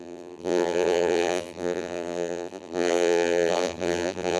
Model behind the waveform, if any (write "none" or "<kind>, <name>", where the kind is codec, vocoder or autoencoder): vocoder, BigVGAN v2